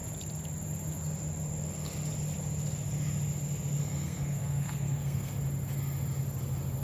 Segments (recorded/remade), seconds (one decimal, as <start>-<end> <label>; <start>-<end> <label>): 0.0-3.8 recorded; 3.8-5.3 remade; 5.3-6.8 recorded